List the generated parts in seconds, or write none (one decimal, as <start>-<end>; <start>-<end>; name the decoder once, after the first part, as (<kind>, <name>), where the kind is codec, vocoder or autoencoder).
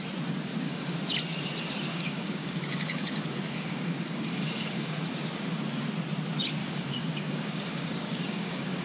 0.5-1.0 (codec, DAC); 1.9-5.0; 6.6-8.8